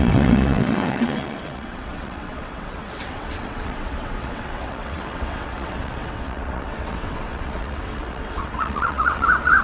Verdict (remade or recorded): remade